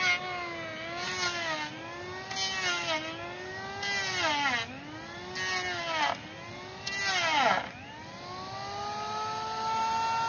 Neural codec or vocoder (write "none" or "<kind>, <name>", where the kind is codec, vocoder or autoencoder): none